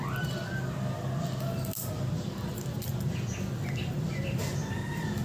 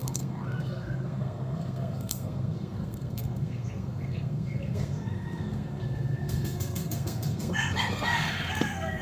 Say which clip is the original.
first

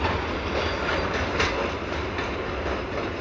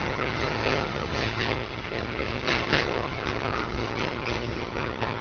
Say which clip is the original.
first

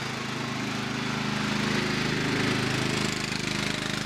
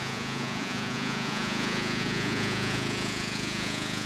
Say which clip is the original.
first